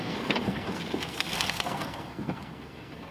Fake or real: fake